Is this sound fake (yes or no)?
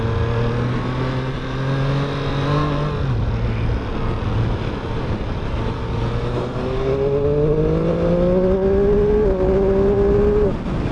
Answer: no